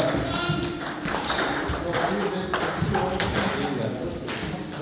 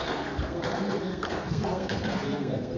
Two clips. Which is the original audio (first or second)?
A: first